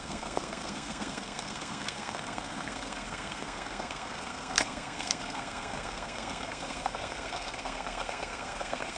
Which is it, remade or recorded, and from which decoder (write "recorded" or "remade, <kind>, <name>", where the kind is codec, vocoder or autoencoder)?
remade, codec, SNAC